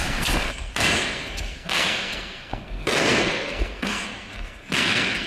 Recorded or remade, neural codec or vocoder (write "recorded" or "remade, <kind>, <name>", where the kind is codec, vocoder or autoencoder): remade, codec, SNAC